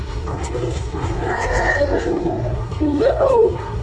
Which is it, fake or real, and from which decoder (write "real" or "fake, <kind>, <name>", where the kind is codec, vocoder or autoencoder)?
fake, codec, SNAC